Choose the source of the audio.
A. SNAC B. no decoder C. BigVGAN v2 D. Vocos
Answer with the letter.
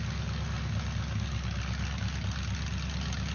B